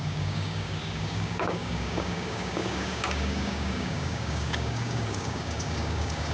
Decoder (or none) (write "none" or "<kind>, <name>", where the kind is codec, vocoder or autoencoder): codec, DAC